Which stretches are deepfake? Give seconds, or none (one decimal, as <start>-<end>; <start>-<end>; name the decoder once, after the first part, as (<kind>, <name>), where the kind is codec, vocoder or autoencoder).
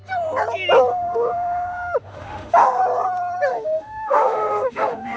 0.9-2.8 (autoencoder, DAC-VAE); 3.5-5.2